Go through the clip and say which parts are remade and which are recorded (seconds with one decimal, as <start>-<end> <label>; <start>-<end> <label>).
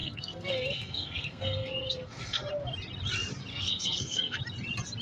0.0-2.5 remade; 2.5-3.5 recorded; 3.5-4.4 remade; 4.4-5.0 recorded